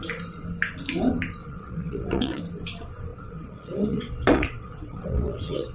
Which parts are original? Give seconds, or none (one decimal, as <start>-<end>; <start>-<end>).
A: 0.0-1.4; 2.4-3.1